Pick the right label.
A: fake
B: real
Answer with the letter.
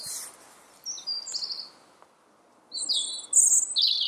B